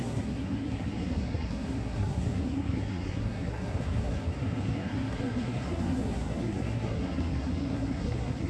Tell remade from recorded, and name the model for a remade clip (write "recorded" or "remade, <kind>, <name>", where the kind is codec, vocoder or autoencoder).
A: remade, codec, SNAC